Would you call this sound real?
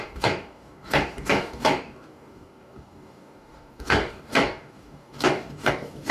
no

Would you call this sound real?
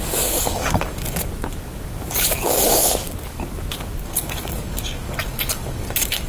no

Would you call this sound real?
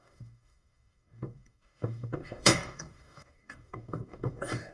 no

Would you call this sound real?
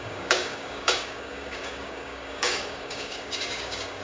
no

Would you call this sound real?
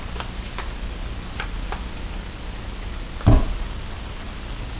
yes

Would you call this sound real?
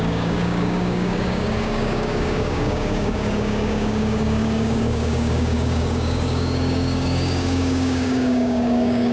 no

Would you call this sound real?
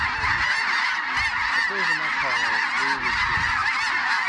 yes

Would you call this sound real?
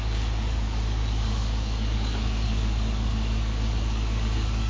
no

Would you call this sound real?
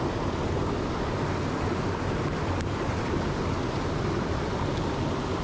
yes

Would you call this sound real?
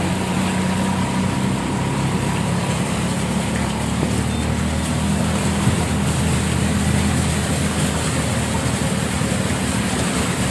yes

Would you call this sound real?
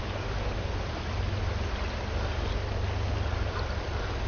yes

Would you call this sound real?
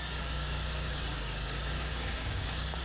no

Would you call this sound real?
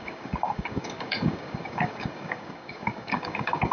no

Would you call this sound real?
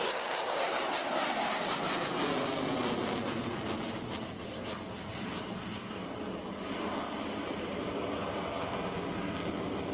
yes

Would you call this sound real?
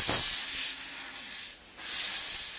yes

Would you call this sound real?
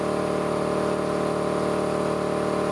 yes